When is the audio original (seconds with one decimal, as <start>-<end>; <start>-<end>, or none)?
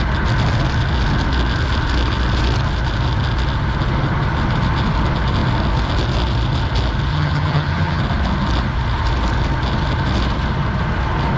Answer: 0.0-7.1; 8.0-11.4